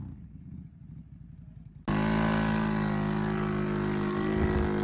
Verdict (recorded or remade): recorded